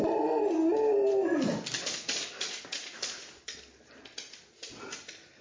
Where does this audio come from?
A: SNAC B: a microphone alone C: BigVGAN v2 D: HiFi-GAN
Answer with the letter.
B